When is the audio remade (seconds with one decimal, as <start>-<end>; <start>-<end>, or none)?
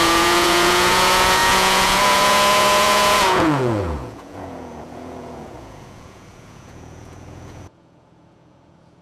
0.0-9.0